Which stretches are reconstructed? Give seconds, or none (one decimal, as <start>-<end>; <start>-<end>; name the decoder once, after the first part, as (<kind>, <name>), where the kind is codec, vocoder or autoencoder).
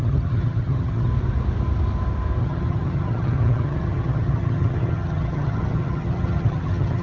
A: 0.0-1.1 (vocoder, HiFi-GAN); 2.4-7.0